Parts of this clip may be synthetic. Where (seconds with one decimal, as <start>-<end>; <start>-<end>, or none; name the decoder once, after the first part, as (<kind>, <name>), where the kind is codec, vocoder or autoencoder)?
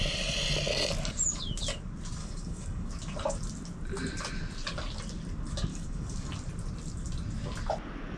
2.2-2.9 (codec, DAC); 5.7-6.3